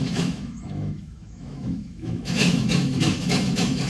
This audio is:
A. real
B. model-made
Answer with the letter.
B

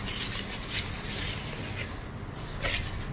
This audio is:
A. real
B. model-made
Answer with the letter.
A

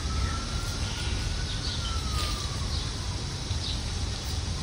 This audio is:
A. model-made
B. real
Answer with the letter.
B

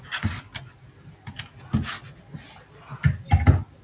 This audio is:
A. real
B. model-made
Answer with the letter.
A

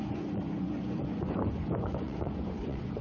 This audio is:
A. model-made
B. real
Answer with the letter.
A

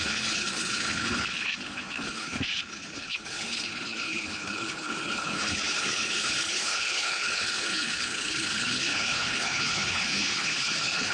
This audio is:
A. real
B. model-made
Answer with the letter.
B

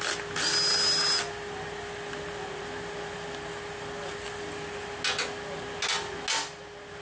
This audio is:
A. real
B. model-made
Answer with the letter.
A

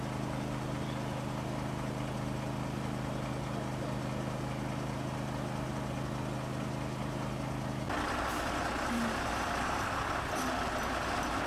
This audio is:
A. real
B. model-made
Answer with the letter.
A